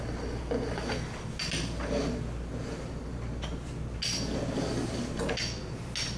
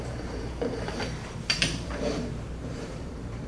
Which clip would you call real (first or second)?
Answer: first